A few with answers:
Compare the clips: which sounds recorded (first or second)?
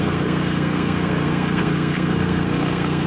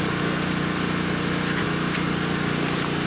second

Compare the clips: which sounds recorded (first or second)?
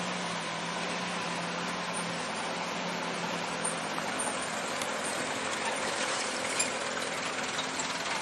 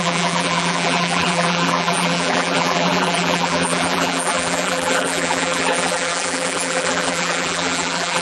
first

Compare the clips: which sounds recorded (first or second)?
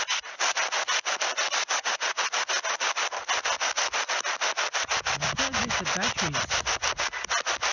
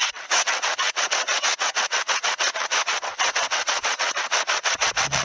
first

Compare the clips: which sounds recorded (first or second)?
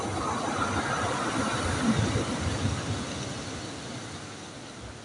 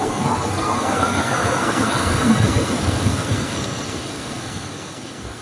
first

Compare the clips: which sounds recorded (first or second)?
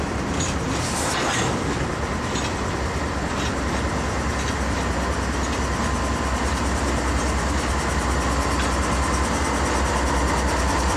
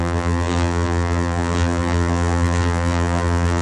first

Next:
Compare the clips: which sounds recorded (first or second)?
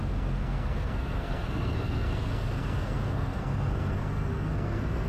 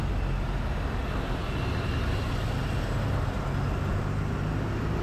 second